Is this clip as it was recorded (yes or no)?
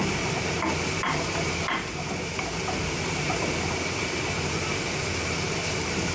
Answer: yes